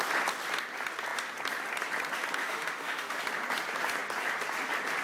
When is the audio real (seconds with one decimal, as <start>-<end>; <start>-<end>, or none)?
0.0-2.4; 3.2-5.0